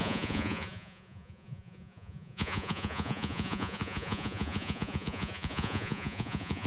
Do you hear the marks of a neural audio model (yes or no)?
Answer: yes